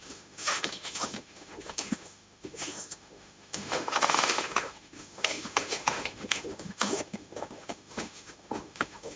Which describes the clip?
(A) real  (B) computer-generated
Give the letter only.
B